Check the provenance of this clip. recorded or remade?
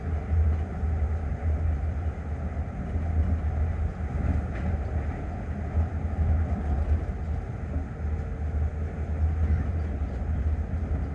recorded